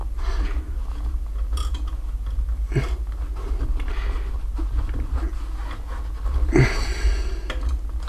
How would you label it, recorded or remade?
recorded